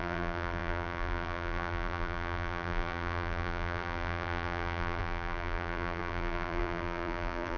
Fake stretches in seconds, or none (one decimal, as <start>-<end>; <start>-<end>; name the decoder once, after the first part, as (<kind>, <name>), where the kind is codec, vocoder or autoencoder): 0.0-7.6 (vocoder, BigVGAN v2)